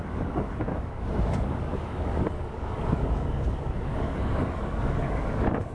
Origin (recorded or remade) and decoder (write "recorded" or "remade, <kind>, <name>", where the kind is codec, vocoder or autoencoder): remade, codec, DAC